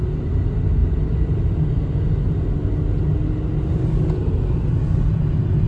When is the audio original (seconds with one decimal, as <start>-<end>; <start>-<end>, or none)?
0.0-5.7